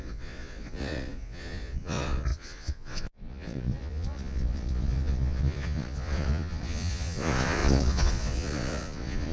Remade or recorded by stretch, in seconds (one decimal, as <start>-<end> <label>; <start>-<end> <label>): 0.0-9.3 remade